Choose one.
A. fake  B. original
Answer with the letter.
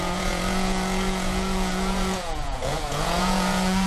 A